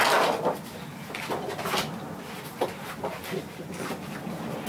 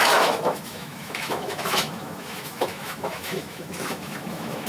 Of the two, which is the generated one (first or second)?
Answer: second